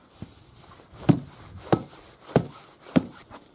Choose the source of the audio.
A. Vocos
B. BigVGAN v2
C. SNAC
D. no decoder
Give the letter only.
D